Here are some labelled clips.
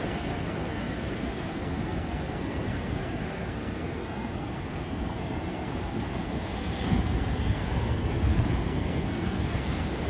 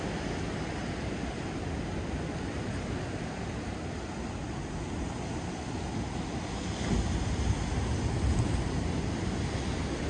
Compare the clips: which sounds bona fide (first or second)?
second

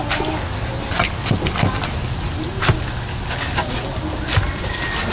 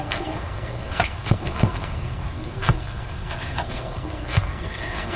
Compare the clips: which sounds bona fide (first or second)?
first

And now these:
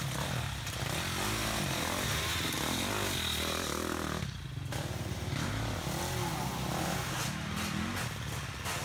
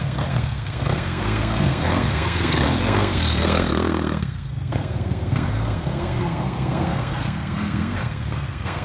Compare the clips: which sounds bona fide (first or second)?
first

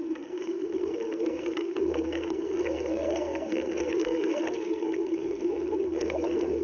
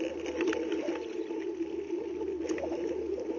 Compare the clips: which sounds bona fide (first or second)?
second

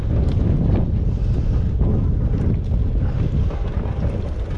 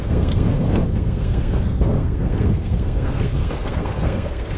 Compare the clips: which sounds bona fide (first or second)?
first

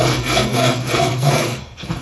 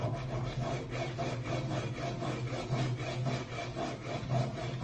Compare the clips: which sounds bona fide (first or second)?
second